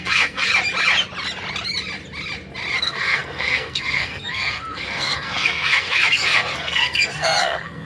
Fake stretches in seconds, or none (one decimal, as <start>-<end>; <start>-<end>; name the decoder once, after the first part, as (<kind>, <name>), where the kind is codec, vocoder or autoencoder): 0.0-0.5 (codec, SNAC); 2.8-7.9